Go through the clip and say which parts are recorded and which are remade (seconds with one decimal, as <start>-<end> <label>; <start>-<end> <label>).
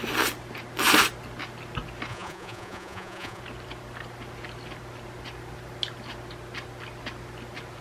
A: 0.0-2.1 recorded; 2.1-3.4 remade; 3.4-7.8 recorded